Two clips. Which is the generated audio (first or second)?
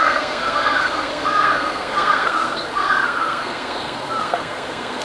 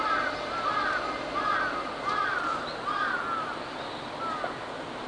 first